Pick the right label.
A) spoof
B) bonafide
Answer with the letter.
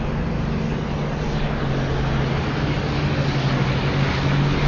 B